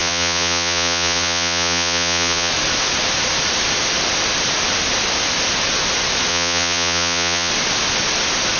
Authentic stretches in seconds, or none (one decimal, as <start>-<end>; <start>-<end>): 2.5-6.3; 7.5-8.6